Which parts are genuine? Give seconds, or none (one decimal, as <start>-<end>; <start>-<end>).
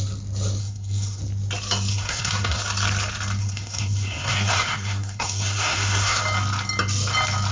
0.0-0.6; 1.2-1.9; 2.6-3.4; 6.2-7.5